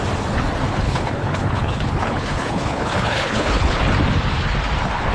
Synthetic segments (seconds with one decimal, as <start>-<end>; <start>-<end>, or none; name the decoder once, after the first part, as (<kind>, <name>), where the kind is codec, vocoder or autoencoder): 0.7-3.8 (codec, HILCodec)